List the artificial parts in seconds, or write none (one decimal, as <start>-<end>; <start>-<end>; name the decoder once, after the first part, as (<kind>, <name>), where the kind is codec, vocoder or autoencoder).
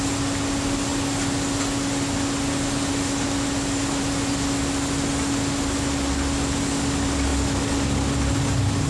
none